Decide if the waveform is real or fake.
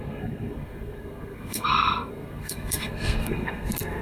fake